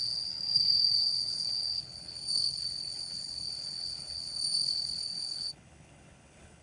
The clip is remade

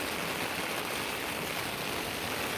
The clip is recorded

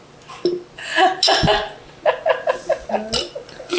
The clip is recorded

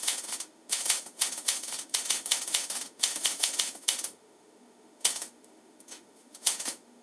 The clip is remade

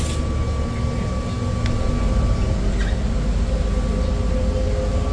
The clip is recorded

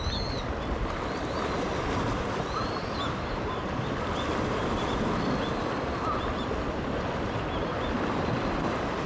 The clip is recorded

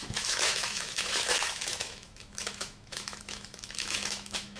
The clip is remade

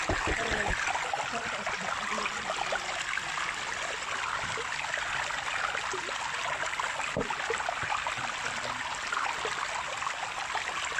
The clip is recorded